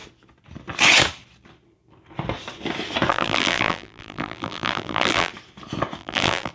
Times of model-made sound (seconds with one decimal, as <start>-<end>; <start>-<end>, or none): 3.1-5.3; 6.0-6.5